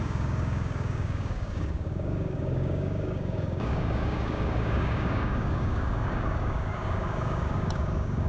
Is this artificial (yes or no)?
yes